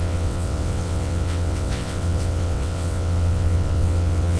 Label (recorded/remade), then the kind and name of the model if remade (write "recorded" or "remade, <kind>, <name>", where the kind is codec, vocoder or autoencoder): remade, vocoder, WaveNeXt